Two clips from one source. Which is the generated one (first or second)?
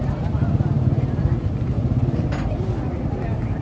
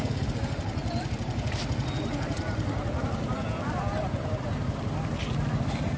first